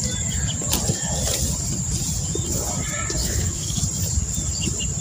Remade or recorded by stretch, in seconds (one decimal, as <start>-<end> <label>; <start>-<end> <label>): 0.0-3.2 recorded; 3.2-3.8 remade; 3.8-5.0 recorded